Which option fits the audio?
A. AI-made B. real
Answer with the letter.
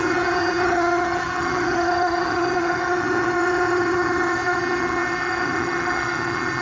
A